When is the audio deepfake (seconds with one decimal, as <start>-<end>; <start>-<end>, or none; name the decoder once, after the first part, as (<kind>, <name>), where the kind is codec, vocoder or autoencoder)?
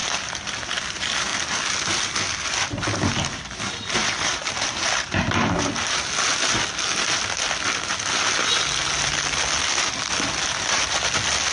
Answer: 0.0-0.8 (vocoder, BigVGAN v2); 4.0-5.7